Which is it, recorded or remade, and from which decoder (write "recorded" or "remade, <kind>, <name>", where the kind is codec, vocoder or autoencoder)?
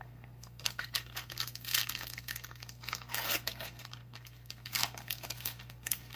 remade, codec, SNAC